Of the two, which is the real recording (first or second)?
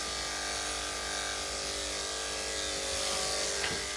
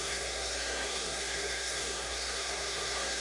first